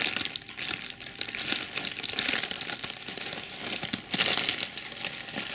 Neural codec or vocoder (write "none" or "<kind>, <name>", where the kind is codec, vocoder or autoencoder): none